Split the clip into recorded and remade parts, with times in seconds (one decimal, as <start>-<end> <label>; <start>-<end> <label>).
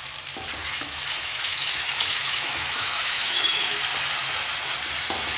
0.0-0.6 recorded; 0.6-3.8 remade; 3.8-5.4 recorded